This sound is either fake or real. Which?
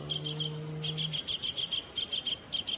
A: real